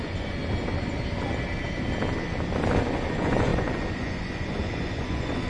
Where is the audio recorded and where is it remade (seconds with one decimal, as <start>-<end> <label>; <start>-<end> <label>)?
0.0-0.4 remade; 0.4-3.1 recorded; 3.1-5.5 remade